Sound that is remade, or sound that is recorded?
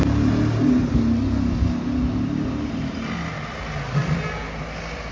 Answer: recorded